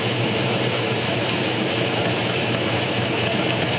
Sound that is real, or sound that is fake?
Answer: fake